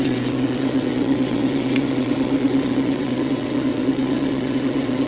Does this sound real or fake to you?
fake